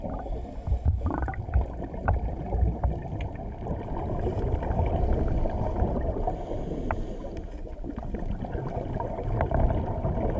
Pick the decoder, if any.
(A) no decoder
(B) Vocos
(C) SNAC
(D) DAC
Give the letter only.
A